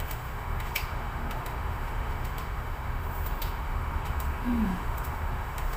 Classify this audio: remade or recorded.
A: remade